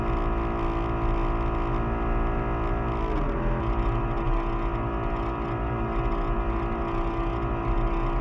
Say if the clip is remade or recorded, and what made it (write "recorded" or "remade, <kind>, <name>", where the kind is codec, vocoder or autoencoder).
recorded